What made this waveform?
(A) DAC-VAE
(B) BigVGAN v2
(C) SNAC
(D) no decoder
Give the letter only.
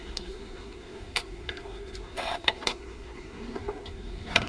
C